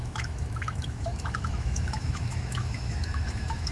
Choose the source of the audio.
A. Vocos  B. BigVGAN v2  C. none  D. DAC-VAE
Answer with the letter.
D